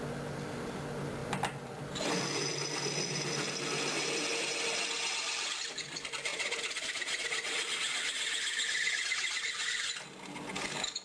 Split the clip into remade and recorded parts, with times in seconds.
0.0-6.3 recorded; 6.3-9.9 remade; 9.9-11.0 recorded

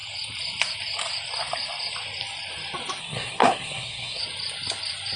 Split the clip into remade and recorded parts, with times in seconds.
0.0-3.0 recorded; 3.0-4.2 remade; 4.2-5.2 recorded